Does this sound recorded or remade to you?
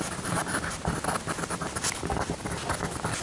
recorded